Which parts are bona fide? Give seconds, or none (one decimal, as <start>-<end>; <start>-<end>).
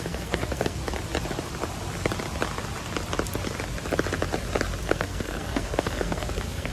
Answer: 0.8-4.8